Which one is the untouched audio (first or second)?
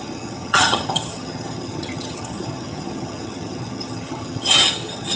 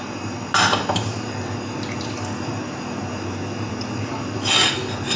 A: second